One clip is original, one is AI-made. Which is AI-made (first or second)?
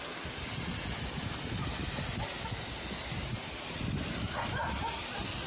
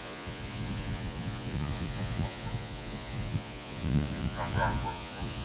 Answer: second